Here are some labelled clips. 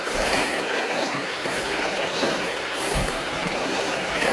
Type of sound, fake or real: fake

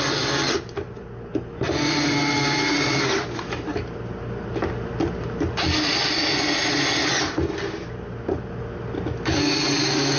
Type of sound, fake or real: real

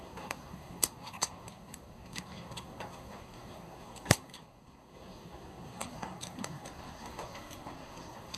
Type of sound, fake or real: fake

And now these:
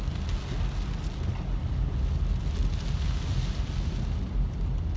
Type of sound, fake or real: real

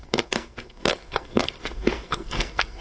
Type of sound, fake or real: fake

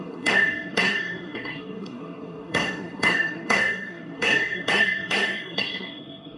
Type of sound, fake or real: fake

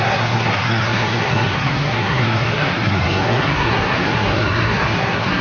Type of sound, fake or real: fake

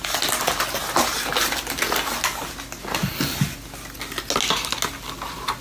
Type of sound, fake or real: real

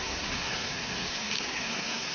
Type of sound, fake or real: fake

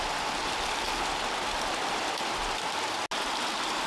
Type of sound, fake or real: real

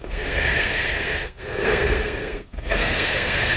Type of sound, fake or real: fake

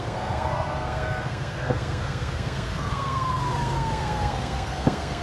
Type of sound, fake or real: fake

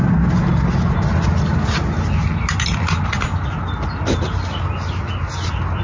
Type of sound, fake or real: real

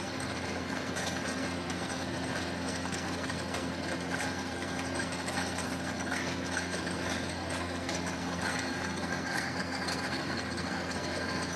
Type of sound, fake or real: fake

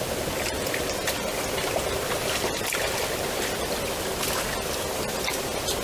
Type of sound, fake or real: real